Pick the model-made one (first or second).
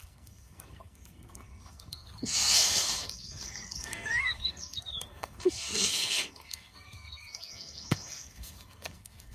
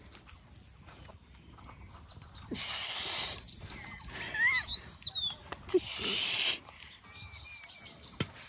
first